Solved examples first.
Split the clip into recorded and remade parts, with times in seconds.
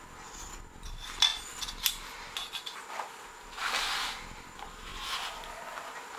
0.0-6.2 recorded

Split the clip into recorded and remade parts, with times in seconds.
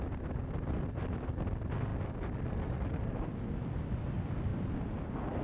0.0-1.9 recorded; 1.9-4.1 remade; 4.1-4.5 recorded; 4.5-5.0 remade; 5.0-5.4 recorded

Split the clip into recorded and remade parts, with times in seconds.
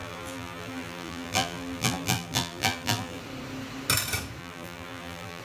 0.0-3.2 remade; 3.2-4.4 recorded; 4.4-5.4 remade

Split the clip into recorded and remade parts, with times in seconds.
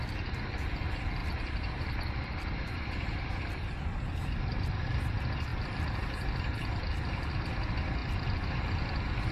0.0-1.2 recorded; 1.2-2.9 remade; 2.9-9.3 recorded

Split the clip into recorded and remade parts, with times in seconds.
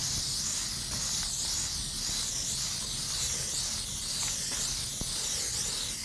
0.0-6.0 recorded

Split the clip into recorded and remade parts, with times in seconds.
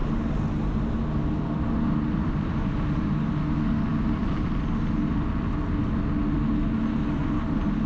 0.0-7.9 recorded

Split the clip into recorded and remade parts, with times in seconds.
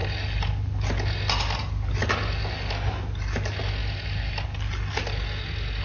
0.0-5.8 recorded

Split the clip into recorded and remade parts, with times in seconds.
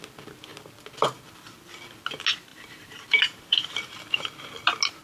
0.0-2.5 recorded; 2.5-4.0 remade; 4.0-5.0 recorded